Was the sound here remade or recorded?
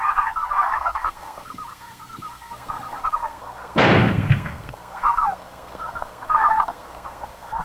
remade